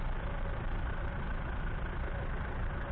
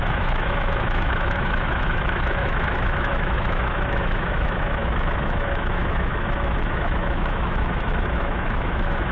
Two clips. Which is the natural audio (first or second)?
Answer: first